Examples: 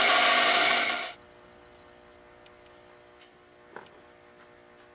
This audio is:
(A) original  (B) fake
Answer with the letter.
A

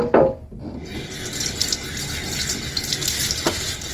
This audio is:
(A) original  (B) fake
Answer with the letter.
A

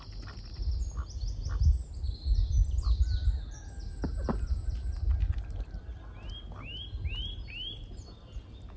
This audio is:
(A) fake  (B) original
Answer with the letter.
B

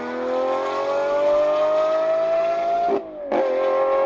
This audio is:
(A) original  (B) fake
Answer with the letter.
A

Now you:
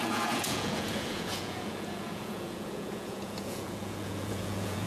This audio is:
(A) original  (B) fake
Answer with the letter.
B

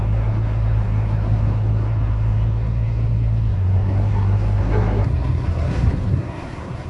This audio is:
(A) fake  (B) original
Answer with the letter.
A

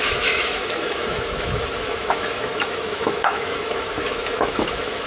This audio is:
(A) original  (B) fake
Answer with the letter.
B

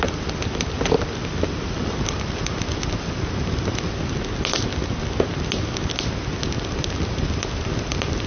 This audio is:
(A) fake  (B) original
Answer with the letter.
B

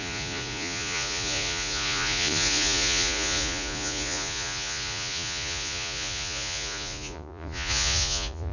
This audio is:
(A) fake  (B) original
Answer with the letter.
A